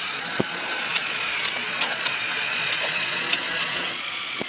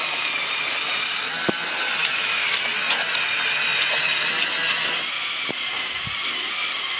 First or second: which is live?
second